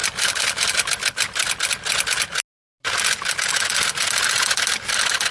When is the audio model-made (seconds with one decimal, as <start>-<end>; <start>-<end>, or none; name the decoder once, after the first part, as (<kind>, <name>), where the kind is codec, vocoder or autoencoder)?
0.0-1.7 (vocoder, BigVGAN v2)